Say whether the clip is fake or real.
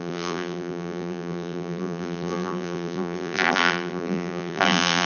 fake